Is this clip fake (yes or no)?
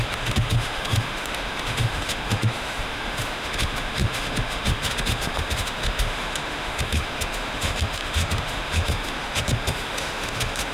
yes